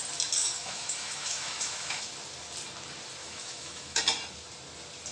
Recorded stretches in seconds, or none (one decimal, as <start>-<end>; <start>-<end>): 0.0-0.4; 2.1-3.2; 4.0-5.1